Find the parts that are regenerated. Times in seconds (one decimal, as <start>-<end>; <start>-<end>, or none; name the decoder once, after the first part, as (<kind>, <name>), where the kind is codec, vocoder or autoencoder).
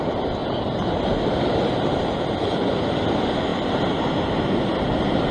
none